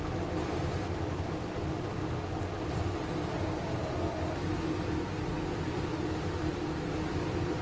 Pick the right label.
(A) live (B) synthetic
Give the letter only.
A